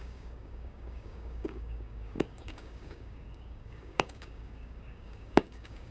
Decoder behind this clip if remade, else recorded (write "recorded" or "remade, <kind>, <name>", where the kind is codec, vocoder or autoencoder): remade, codec, DAC